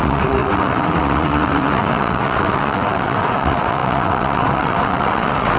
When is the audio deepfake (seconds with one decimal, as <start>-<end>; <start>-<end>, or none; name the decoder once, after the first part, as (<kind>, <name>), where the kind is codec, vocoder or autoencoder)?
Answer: 0.0-5.6 (vocoder, WaveNeXt)